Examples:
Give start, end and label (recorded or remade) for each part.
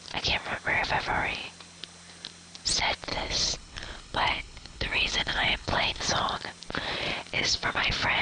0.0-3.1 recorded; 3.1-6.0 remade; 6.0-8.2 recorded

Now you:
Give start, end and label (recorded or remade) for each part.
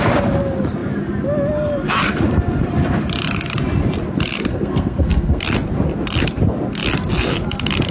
0.0-4.5 recorded; 4.5-5.4 remade; 5.4-7.9 recorded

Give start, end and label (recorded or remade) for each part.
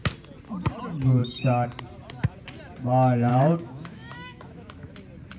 0.0-3.3 recorded; 3.3-4.9 remade; 4.9-5.4 recorded